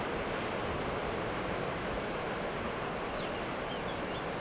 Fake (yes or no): no